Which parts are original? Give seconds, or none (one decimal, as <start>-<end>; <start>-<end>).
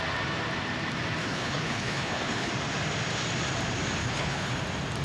0.0-1.2; 2.5-4.0; 4.6-5.0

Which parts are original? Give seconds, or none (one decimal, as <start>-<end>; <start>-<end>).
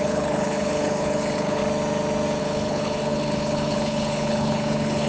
1.6-2.4